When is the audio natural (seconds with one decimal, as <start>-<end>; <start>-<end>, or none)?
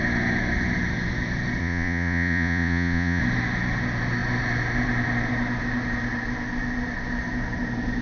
0.0-1.6; 3.2-8.0